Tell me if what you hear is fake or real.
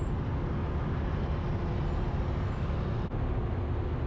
real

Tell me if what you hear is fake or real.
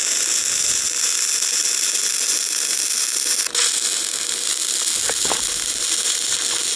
real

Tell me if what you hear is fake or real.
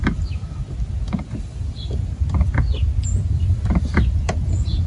real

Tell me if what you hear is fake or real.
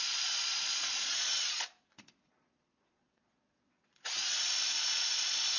fake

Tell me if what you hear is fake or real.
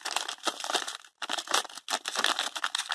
real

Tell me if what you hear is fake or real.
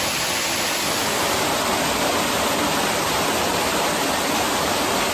real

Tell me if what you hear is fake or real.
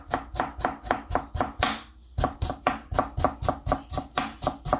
real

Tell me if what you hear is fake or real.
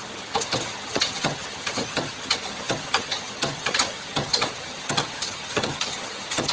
fake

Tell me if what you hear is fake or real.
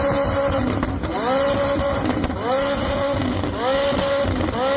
real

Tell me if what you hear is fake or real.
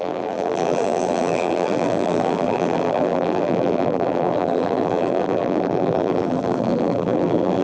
fake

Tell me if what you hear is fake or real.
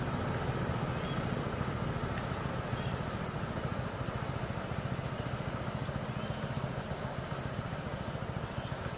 real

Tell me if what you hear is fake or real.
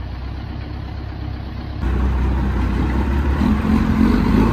real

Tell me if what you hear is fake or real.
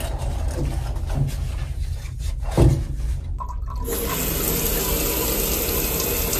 real